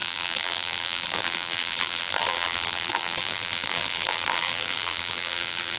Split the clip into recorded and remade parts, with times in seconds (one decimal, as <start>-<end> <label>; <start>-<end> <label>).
0.0-5.8 remade